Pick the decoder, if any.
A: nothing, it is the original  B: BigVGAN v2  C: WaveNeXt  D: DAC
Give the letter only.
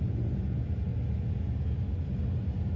A